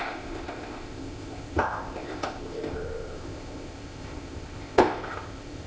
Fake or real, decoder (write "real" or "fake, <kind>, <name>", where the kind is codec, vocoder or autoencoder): fake, codec, ZipCodec